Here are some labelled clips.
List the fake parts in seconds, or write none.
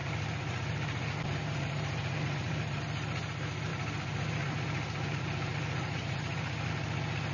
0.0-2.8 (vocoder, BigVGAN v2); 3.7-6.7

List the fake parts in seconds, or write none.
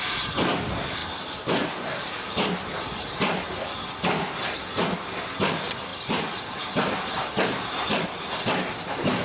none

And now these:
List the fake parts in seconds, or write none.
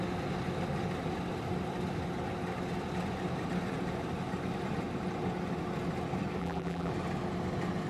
6.4-6.9 (vocoder, BigVGAN v2)